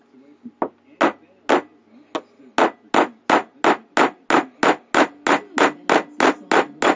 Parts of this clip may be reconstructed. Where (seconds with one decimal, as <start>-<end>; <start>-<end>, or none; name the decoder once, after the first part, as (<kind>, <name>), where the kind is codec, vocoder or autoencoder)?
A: none